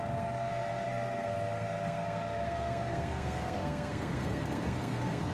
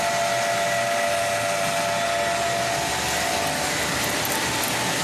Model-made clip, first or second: first